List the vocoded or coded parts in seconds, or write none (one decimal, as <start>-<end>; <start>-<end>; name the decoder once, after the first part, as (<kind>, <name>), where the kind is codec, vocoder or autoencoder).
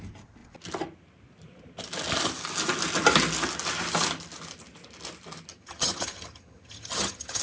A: 5.5-7.4 (vocoder, HiFi-GAN)